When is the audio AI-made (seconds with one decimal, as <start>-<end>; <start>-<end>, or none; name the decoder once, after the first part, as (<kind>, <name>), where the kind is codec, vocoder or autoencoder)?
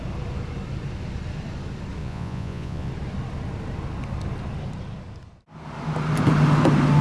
2.0-2.9 (vocoder, Vocos)